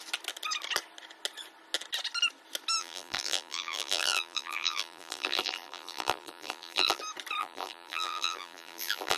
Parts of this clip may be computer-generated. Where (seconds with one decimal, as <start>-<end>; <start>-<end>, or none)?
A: 2.8-7.0; 7.4-9.2